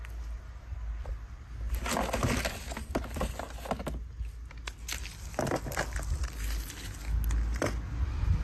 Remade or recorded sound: recorded